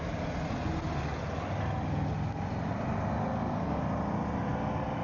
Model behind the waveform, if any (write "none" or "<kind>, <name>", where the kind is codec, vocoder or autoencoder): none